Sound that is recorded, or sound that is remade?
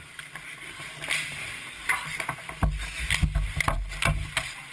recorded